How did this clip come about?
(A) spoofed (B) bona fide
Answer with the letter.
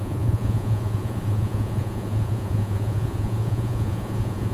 A